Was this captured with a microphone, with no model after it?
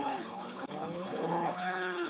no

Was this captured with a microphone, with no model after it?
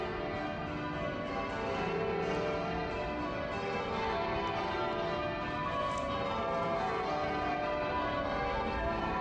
yes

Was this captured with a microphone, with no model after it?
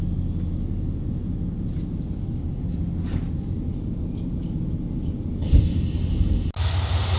yes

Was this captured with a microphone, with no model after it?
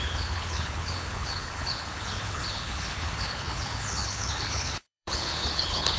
no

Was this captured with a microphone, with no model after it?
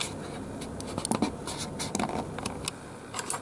yes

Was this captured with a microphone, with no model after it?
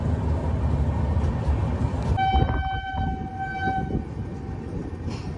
yes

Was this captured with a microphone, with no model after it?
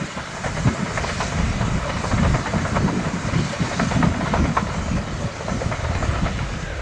yes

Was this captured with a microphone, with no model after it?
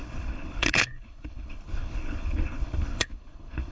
no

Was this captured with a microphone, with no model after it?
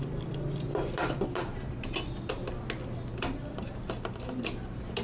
yes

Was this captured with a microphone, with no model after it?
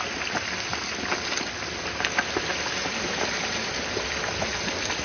yes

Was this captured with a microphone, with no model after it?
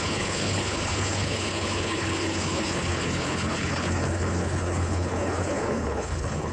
no